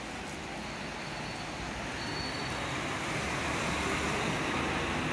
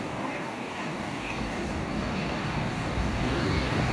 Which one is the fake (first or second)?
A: second